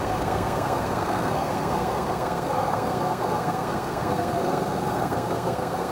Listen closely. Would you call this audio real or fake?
fake